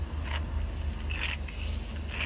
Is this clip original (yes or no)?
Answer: yes